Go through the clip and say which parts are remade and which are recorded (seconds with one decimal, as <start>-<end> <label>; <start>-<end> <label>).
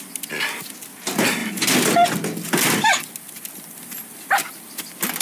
0.0-5.2 recorded